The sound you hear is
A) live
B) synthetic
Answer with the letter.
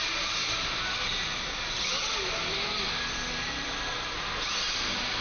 A